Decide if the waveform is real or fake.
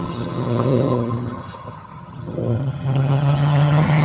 fake